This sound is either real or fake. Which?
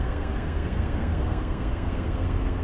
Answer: fake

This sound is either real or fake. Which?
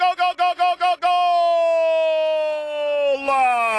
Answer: real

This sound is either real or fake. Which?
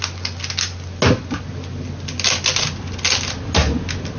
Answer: real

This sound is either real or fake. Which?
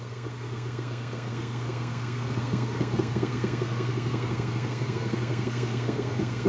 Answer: fake